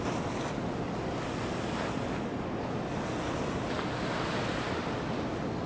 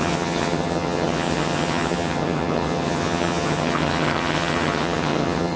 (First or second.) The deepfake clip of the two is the second